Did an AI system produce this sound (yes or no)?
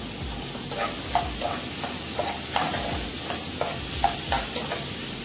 no